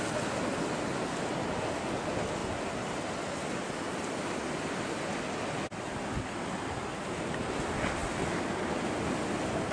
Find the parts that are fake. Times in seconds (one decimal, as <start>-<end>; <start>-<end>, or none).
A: none